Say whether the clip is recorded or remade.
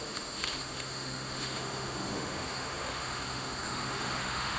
remade